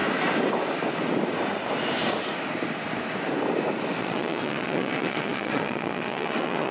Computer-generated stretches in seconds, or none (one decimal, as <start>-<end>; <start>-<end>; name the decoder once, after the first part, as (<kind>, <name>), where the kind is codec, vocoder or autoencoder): 4.0-6.7 (vocoder, Vocos)